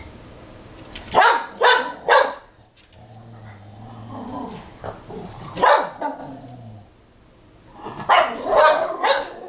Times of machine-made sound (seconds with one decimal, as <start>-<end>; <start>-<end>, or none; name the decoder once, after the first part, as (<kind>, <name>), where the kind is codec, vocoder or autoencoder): 1.9-2.4 (vocoder, Vocos)